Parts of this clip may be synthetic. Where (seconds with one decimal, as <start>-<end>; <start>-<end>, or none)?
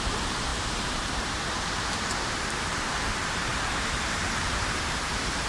0.0-3.5; 4.4-5.5